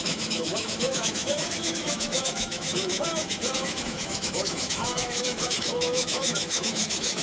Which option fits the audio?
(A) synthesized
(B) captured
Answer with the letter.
A